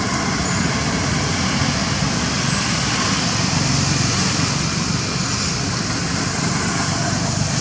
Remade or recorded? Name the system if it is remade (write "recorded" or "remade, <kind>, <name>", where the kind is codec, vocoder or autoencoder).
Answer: recorded